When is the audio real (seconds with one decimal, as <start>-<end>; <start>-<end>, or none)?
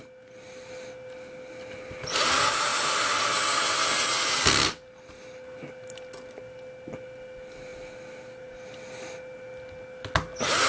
0.0-10.7